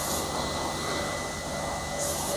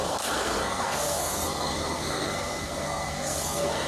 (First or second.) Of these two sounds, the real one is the first